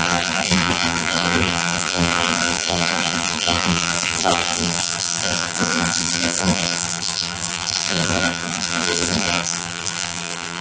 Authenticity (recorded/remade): remade